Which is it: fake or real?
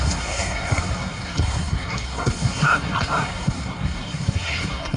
fake